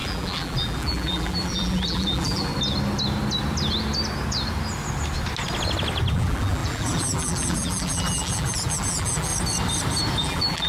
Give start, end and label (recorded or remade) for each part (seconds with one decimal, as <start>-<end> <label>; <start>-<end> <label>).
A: 0.0-2.5 remade; 2.5-6.1 recorded; 6.1-9.3 remade; 9.3-10.2 recorded; 10.2-10.7 remade